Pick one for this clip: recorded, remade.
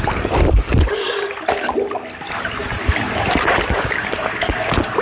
recorded